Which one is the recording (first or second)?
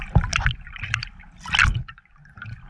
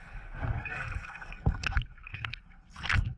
first